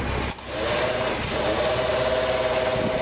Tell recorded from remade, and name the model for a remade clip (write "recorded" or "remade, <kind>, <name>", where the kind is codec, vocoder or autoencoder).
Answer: recorded